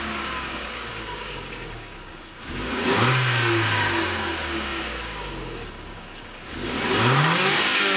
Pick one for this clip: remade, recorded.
remade